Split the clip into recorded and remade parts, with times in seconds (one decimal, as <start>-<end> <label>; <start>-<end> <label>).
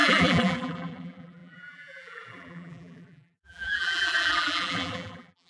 0.0-5.5 remade